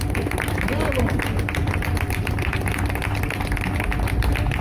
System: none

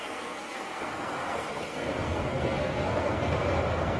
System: codec, SNAC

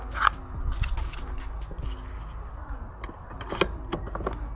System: none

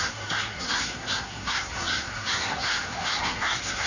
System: codec, SNAC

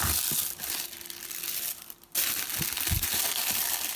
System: none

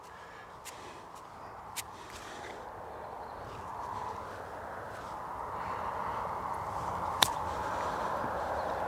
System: none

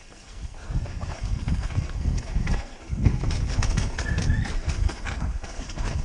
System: codec, SNAC